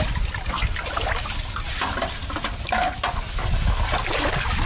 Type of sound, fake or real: real